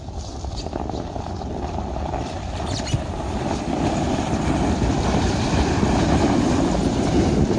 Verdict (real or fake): real